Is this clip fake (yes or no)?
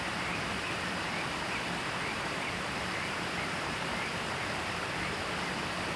no